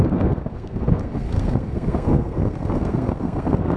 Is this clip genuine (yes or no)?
no